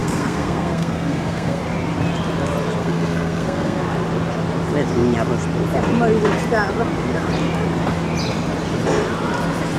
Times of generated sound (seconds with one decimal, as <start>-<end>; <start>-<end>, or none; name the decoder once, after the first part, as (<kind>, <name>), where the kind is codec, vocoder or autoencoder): 0.0-1.6 (codec, SNAC); 2.8-3.8